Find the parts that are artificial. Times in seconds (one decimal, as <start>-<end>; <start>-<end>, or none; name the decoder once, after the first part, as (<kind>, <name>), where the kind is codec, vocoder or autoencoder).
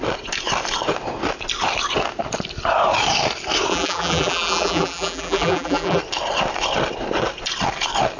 3.7-6.0 (vocoder, BigVGAN v2)